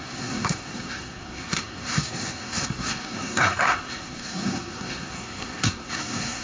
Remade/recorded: remade